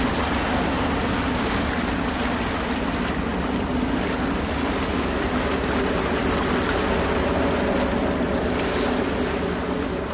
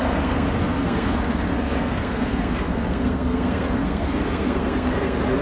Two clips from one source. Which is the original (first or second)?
first